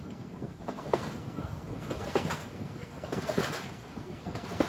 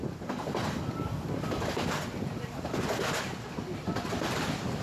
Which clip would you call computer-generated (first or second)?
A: first